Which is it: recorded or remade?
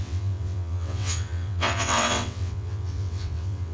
remade